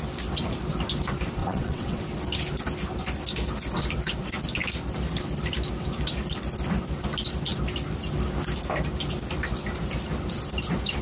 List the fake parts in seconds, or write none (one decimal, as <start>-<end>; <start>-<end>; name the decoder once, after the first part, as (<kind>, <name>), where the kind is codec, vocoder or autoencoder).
1.4-2.0 (vocoder, WaveNeXt)